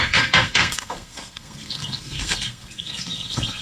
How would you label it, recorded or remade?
remade